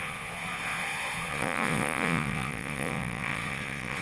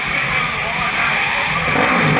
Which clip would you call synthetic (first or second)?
first